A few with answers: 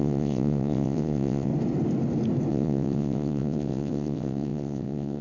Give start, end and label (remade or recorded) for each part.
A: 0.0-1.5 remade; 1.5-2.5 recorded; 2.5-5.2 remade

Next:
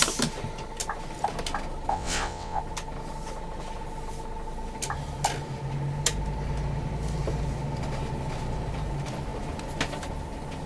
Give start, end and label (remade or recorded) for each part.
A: 0.0-1.9 recorded; 1.9-2.6 remade; 2.6-10.7 recorded

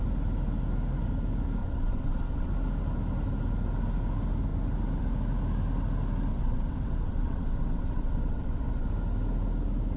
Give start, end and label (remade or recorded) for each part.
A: 0.0-1.6 recorded; 1.6-2.5 remade; 2.5-6.3 recorded; 6.3-8.9 remade; 8.9-10.0 recorded

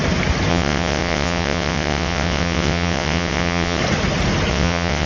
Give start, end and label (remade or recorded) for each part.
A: 0.0-0.5 recorded; 0.5-3.8 remade; 3.8-4.5 recorded; 4.5-5.1 remade

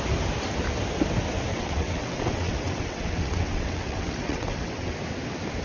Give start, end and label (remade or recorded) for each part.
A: 0.0-1.5 recorded; 1.5-4.9 remade; 4.9-5.6 recorded

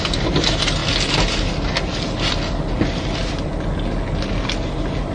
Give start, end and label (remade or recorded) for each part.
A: 0.0-5.1 recorded